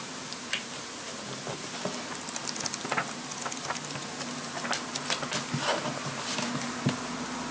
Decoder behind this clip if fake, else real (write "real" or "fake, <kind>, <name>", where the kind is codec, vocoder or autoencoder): real